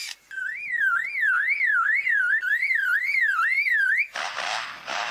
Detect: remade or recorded recorded